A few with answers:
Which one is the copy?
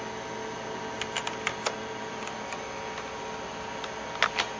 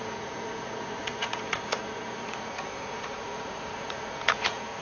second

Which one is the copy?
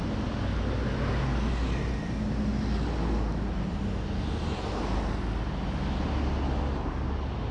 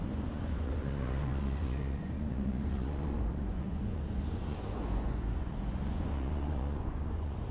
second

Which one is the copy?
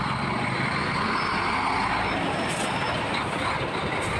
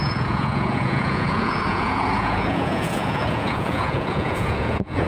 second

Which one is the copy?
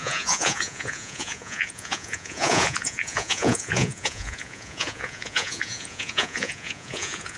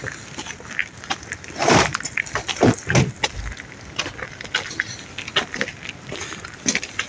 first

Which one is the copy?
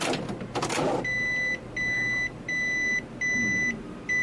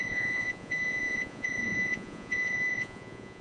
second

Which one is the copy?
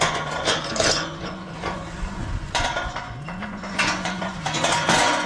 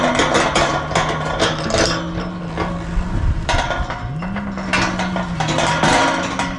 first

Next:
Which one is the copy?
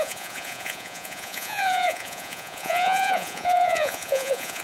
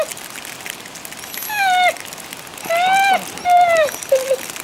first